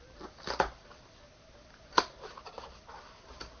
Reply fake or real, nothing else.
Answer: real